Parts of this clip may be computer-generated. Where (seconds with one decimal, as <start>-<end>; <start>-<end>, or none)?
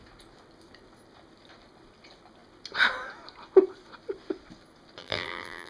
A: 5.0-5.7